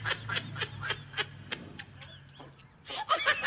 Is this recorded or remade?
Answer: recorded